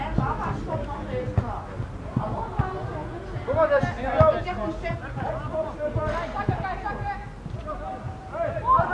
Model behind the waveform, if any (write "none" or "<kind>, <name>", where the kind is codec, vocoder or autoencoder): none